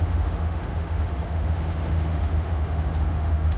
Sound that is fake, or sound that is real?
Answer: fake